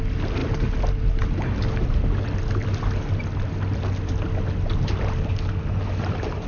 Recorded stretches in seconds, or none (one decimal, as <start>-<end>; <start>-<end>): 0.0-6.5